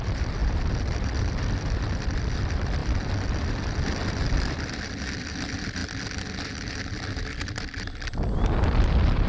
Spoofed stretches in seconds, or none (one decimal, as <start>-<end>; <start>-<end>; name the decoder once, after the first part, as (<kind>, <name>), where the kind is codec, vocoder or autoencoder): 0.0-5.8 (vocoder, BigVGAN v2); 6.7-9.3